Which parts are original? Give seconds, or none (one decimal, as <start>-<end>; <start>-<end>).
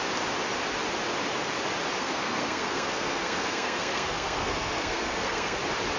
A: 0.0-2.0; 5.6-6.0